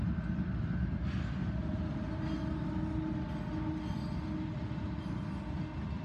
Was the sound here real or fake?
real